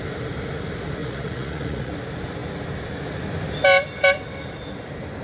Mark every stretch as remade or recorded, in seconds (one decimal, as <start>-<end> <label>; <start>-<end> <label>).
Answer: 0.0-1.0 recorded; 1.0-1.9 remade; 1.9-5.2 recorded